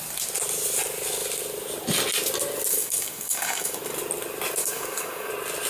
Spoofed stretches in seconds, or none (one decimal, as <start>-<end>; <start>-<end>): 2.7-3.8; 4.6-5.3